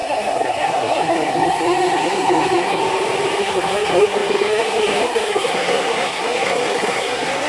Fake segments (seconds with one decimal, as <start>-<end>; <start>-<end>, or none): 0.0-2.8; 3.4-7.5